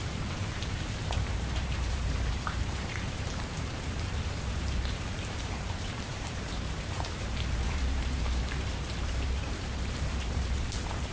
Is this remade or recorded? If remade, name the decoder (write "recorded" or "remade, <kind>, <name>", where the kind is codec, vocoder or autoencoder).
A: remade, vocoder, BigVGAN v2